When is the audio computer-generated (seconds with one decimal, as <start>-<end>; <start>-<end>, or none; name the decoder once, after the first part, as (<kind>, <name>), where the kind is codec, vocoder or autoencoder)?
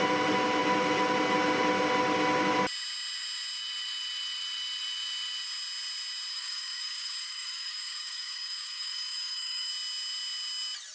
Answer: 6.3-9.7 (codec, DAC)